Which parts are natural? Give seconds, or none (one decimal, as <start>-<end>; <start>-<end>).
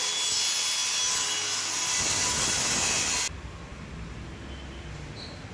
0.0-5.5